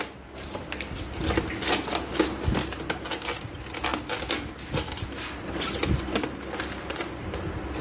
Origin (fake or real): real